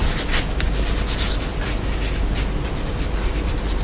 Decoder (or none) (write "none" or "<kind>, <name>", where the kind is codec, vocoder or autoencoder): none